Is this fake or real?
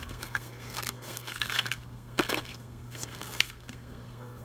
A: fake